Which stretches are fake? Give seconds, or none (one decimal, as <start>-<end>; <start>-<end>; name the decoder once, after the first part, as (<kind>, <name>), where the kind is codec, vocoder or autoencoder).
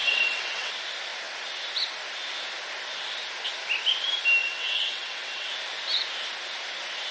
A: 0.0-0.7 (vocoder, WaveNeXt); 4.4-5.5